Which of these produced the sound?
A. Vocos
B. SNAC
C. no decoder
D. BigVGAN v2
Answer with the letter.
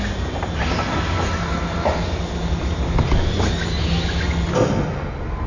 C